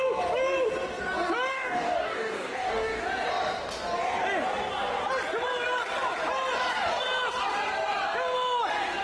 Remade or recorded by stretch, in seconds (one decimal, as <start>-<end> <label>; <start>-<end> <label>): 0.0-1.5 recorded; 1.5-3.0 remade; 3.0-9.0 recorded